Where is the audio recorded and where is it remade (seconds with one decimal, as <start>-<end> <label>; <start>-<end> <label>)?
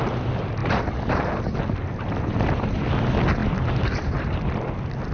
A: 0.0-5.1 recorded